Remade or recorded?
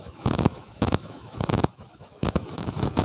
remade